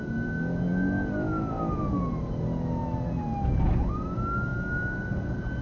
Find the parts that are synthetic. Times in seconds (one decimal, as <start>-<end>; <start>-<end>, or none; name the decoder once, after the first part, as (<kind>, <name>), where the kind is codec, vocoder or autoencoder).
none